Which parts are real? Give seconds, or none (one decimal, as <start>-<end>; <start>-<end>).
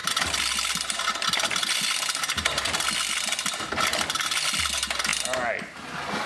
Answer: 0.0-6.3